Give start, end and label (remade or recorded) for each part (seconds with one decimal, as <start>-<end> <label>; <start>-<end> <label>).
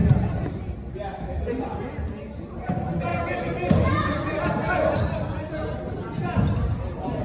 0.0-1.6 remade; 1.6-7.2 recorded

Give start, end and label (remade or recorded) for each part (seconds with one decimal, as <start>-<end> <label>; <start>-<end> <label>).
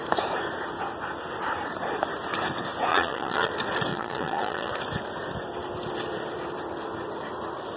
0.0-2.9 recorded; 2.9-3.5 remade; 3.5-3.9 recorded; 3.9-4.7 remade; 4.7-7.8 recorded